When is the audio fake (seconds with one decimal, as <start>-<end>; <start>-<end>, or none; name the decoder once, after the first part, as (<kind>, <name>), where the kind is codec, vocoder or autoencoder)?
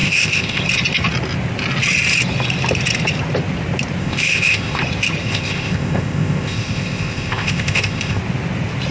0.0-0.6 (codec, ZipCodec); 4.0-4.8; 5.2-8.2